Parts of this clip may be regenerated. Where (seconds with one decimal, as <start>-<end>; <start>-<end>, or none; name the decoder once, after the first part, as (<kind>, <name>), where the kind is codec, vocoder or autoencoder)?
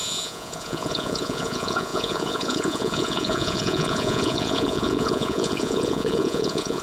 0.0-6.8 (vocoder, Vocos)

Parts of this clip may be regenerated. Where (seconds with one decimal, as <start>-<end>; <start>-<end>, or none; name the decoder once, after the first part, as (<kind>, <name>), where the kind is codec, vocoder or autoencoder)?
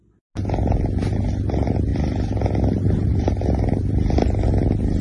none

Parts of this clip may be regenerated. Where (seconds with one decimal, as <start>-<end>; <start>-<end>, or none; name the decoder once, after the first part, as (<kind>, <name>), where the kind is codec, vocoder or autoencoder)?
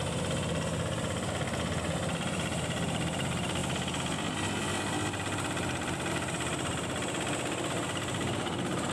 none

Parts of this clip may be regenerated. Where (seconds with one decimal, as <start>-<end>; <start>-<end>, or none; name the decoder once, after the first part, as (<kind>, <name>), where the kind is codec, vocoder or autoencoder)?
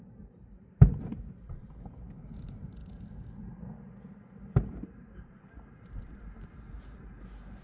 0.0-2.8 (vocoder, BigVGAN v2); 4.7-7.6